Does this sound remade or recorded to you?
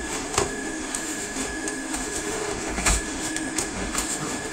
remade